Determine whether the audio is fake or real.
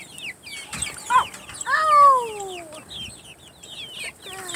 real